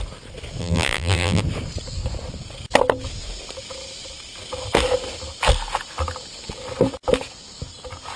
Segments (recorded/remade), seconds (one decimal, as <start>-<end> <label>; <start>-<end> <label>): 0.0-0.6 recorded; 0.6-1.4 remade; 1.4-8.2 recorded